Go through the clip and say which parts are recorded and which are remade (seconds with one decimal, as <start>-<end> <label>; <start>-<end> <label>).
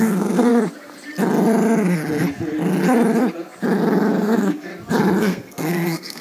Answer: 0.0-0.5 remade; 0.5-4.2 recorded; 4.2-4.7 remade; 4.7-5.2 recorded; 5.2-6.2 remade